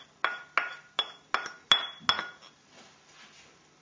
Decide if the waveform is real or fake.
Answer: real